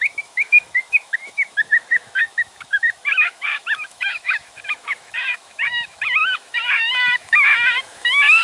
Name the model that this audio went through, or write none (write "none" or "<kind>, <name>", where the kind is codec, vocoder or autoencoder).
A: autoencoder, DAC-VAE